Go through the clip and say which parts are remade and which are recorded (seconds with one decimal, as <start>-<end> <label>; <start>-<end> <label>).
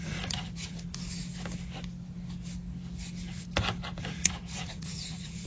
0.0-0.9 remade; 0.9-4.0 recorded; 4.0-5.5 remade